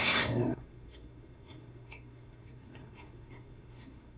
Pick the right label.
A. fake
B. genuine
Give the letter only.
A